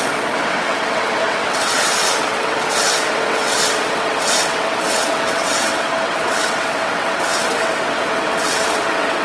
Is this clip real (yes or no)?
no